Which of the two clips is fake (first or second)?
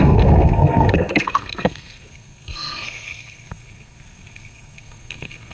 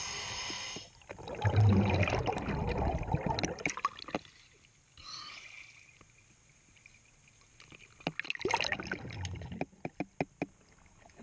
first